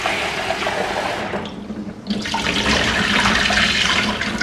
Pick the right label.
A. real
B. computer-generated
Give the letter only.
A